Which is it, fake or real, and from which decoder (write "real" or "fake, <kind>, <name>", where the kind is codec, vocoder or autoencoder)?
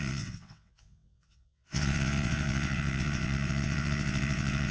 fake, vocoder, WaveNeXt